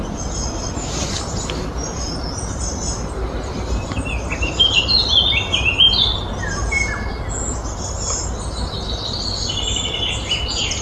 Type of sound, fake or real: real